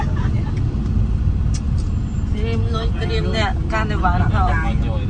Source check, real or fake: real